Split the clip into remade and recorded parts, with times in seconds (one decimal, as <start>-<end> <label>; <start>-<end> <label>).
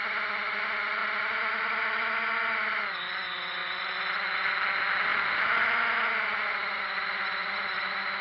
0.0-1.0 recorded; 1.0-2.1 remade; 2.1-3.6 recorded; 3.6-4.5 remade; 4.5-5.1 recorded; 5.1-8.2 remade